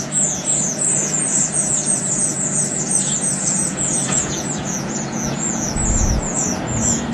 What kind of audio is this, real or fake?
fake